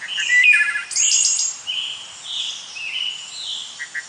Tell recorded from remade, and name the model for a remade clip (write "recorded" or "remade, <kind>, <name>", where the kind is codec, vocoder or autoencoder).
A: recorded